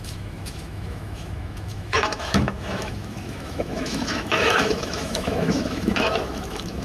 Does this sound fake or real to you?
fake